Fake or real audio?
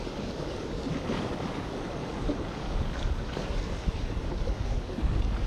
fake